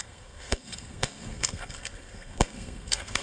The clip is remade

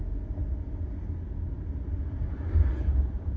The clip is recorded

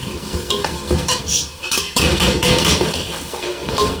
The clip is remade